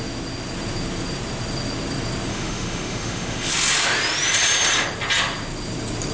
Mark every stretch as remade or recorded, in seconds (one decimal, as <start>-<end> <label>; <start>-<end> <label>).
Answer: 0.0-2.3 recorded; 2.3-3.5 remade; 3.5-6.1 recorded